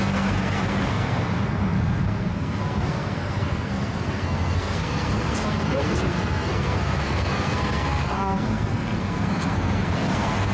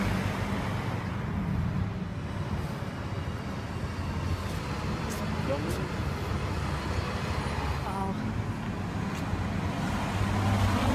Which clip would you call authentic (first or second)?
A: second